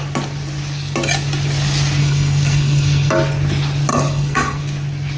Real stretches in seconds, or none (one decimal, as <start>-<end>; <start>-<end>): 0.0-2.0; 3.1-3.9; 4.6-5.2